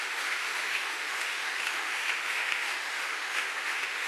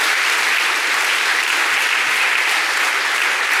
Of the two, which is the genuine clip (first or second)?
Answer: second